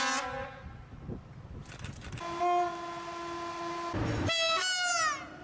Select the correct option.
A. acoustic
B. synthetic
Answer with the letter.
A